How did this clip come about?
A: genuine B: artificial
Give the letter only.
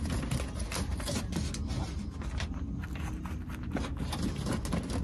A